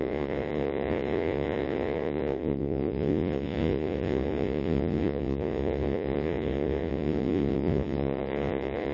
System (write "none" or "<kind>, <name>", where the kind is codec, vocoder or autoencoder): vocoder, Vocos